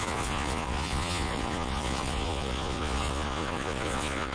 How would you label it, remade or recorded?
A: remade